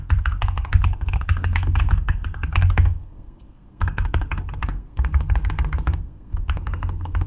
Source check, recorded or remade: remade